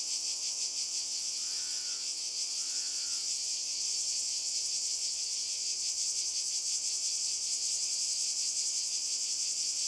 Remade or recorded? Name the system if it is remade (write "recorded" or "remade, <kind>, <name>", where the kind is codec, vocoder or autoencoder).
remade, vocoder, WaveNeXt